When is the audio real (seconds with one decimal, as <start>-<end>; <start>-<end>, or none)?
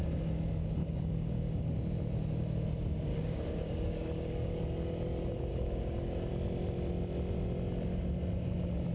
0.0-0.8; 1.6-3.1; 4.6-5.5; 6.3-8.9